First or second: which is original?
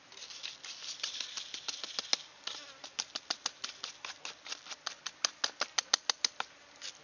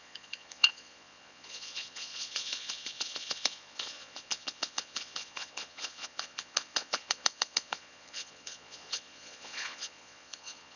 first